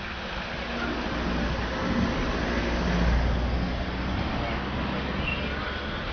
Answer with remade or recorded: recorded